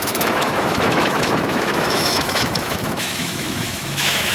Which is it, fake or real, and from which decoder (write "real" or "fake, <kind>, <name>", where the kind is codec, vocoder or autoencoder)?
fake, autoencoder, DAC-VAE